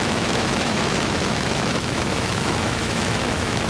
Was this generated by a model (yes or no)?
yes